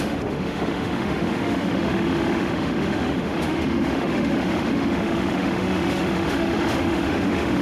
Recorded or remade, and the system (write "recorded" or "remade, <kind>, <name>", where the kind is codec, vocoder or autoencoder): remade, autoencoder, DAC-VAE